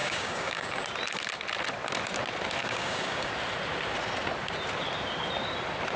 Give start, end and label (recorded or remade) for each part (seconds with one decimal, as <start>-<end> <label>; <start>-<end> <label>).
0.0-0.7 remade; 0.7-2.6 recorded; 2.6-3.3 remade; 3.3-6.0 recorded

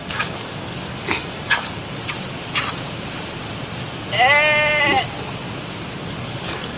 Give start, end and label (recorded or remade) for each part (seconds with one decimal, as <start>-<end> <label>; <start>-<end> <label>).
0.0-2.0 remade; 2.0-6.1 recorded; 6.1-6.8 remade

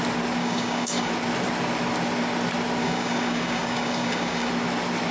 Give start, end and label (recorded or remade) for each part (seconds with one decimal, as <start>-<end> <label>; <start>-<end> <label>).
0.0-0.4 recorded; 0.4-1.1 remade; 1.1-2.8 recorded; 2.8-4.5 remade; 4.5-5.1 recorded

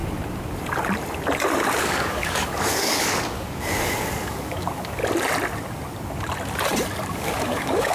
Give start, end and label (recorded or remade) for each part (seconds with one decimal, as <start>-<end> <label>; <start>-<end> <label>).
0.0-1.8 recorded; 1.8-5.0 remade; 5.0-7.1 recorded; 7.1-7.9 remade